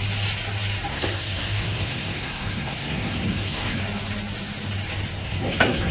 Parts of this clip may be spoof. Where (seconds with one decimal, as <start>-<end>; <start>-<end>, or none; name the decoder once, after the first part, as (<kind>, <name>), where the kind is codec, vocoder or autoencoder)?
0.9-3.8 (codec, SNAC); 5.2-5.9